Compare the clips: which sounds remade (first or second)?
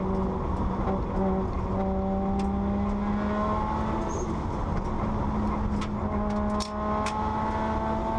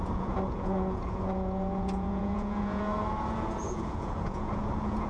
second